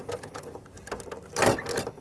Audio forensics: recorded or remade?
recorded